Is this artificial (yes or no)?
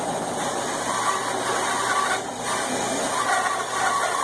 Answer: no